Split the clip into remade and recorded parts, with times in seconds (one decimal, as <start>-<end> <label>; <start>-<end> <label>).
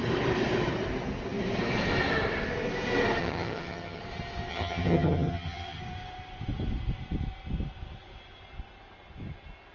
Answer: 0.0-3.2 recorded; 3.2-4.0 remade; 4.0-4.5 recorded; 4.5-5.8 remade; 5.8-9.7 recorded